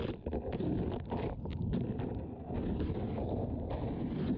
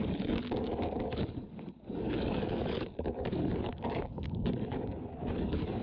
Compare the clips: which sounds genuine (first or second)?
first